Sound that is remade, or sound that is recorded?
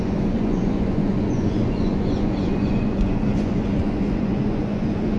remade